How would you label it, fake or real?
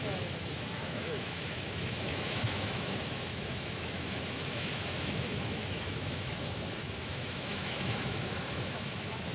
fake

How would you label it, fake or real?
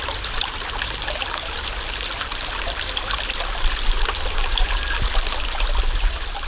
real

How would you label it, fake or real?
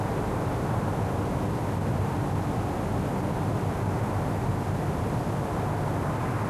real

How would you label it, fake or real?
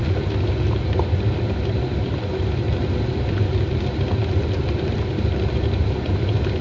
real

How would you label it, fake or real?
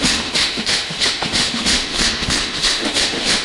fake